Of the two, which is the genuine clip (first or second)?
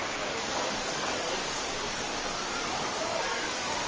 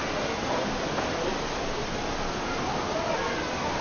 second